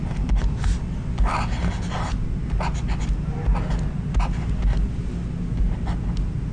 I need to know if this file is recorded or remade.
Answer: recorded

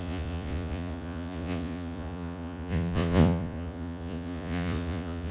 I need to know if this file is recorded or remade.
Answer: remade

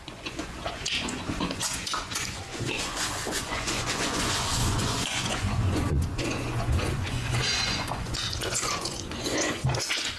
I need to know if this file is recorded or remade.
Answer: remade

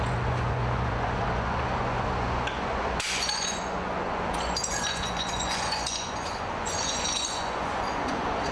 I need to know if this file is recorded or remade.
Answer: remade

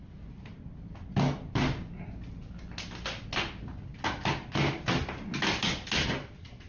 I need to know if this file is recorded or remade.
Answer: recorded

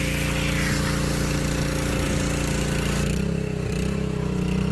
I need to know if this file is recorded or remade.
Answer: recorded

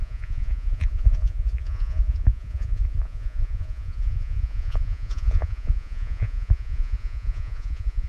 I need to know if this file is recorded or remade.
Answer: remade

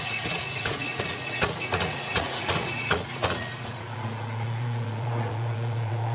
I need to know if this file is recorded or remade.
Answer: remade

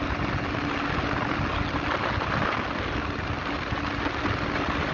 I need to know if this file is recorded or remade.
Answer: recorded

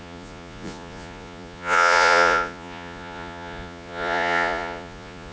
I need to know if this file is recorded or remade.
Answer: remade